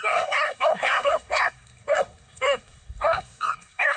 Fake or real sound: fake